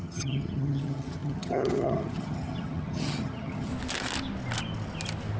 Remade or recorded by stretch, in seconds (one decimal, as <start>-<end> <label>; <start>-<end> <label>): 0.0-3.7 remade; 3.7-5.4 recorded